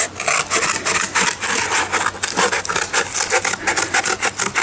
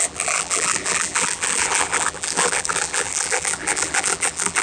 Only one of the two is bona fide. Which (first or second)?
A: first